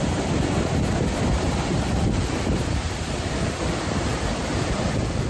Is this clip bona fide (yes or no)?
no